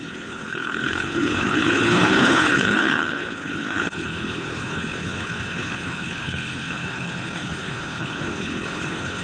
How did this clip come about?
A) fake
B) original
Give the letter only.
A